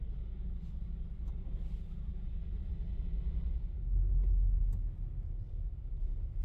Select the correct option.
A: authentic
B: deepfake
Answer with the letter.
A